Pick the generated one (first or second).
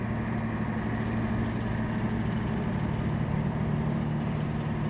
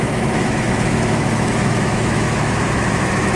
second